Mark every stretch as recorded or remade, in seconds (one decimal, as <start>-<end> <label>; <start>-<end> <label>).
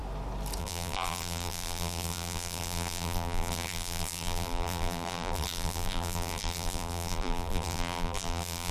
0.0-0.6 recorded; 0.6-8.7 remade